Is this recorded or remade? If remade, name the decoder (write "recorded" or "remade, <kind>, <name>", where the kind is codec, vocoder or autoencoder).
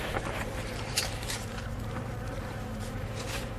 remade, vocoder, BigVGAN v2